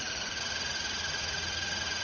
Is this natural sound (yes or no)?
no